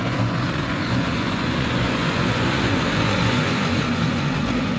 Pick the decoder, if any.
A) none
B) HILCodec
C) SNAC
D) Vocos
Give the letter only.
D